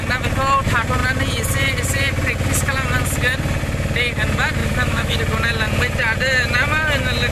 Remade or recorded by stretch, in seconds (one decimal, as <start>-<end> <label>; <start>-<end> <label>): 0.0-4.6 recorded; 4.6-5.2 remade; 5.2-7.3 recorded